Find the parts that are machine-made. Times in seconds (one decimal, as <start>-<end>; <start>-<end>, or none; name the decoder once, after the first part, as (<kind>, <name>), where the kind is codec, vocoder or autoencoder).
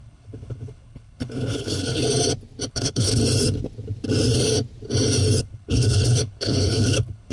0.0-2.0 (codec, HILCodec); 2.7-3.2; 5.4-7.3